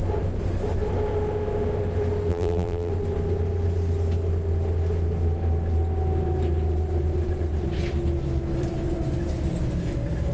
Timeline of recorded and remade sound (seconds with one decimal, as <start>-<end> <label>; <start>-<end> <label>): 0.0-2.3 recorded; 2.3-2.9 remade; 2.9-10.3 recorded